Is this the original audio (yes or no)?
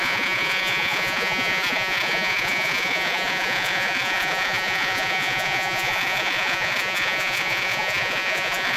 no